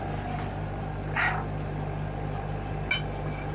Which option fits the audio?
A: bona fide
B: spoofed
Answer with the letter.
A